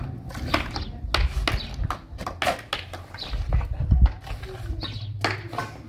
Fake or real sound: real